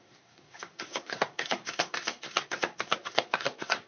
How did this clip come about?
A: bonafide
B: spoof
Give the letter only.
B